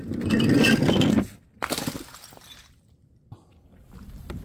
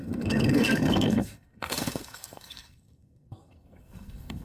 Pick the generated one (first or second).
second